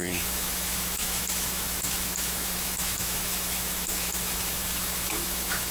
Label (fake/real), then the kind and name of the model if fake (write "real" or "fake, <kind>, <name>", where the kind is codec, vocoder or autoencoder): fake, autoencoder, DAC-VAE